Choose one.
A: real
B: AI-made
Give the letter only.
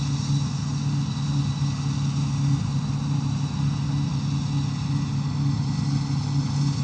A